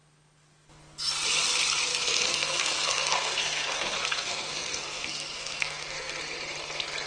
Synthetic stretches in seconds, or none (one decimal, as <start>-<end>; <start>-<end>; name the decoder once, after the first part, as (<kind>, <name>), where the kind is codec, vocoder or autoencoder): 1.9-6.2 (codec, SNAC)